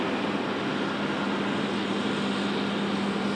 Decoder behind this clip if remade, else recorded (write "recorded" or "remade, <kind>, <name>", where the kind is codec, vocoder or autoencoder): recorded